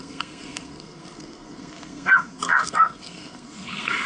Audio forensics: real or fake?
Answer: fake